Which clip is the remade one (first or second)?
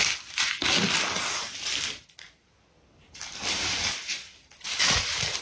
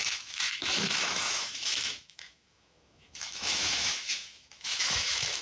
second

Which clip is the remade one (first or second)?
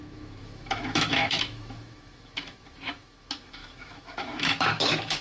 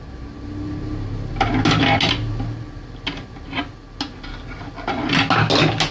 first